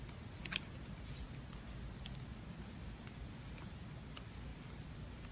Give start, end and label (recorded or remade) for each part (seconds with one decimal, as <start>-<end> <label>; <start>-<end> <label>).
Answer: 0.0-5.3 recorded